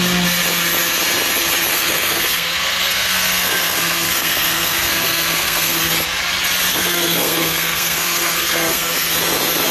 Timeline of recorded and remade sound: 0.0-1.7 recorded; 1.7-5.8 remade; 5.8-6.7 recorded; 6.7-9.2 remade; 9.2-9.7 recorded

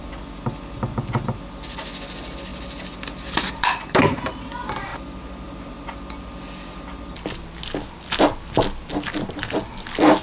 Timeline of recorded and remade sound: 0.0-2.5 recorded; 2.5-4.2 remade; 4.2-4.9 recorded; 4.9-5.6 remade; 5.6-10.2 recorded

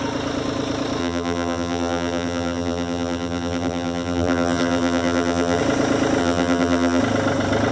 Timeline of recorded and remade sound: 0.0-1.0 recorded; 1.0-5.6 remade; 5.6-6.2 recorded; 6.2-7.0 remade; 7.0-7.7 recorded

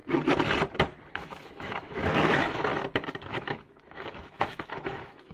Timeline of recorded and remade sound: 0.0-1.1 recorded; 1.1-2.7 remade; 2.7-3.2 recorded; 3.2-5.3 remade

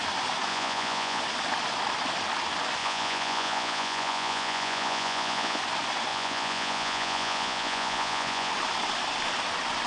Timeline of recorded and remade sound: 0.0-0.5 recorded; 0.5-1.2 remade; 1.2-2.8 recorded; 2.8-5.6 remade; 5.6-6.1 recorded; 6.1-8.5 remade; 8.5-9.9 recorded